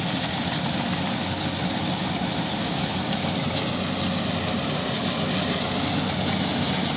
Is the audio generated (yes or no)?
no